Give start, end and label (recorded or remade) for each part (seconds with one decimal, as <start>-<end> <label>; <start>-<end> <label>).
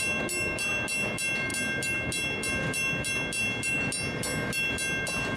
0.0-5.4 recorded